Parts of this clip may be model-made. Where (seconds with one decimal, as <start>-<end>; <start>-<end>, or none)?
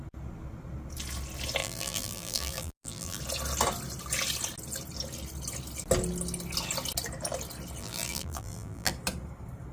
1.6-3.2; 7.8-8.9